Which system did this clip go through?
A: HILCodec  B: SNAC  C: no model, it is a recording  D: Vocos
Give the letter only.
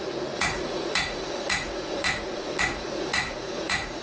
D